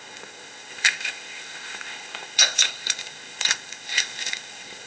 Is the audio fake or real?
fake